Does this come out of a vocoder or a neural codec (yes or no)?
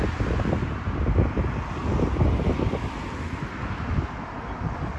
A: no